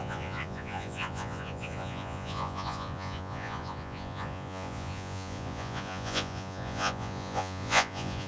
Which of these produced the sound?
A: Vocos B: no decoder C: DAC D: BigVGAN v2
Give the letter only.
A